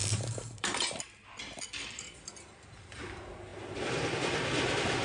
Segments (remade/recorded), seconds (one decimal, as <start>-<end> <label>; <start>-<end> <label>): 0.0-3.0 remade; 3.0-5.0 recorded